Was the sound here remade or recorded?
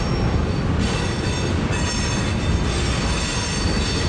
recorded